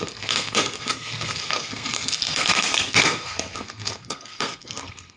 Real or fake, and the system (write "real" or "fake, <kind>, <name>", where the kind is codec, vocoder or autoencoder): fake, codec, SNAC